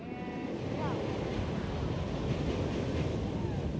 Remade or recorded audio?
recorded